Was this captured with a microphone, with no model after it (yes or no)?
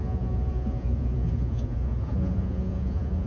no